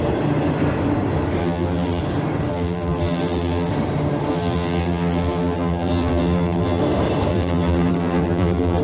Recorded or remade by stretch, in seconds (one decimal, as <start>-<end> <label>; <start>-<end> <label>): 0.0-1.4 recorded; 1.4-2.0 remade; 2.0-2.5 recorded; 2.5-3.7 remade; 3.7-4.3 recorded; 4.3-6.8 remade; 6.8-7.3 recorded; 7.3-8.8 remade